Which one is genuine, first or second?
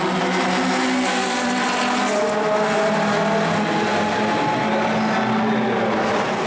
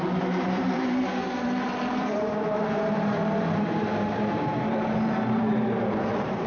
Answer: first